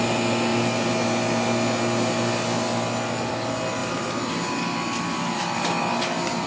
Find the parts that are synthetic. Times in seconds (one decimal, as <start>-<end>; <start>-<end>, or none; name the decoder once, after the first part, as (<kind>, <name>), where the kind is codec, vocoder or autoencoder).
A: none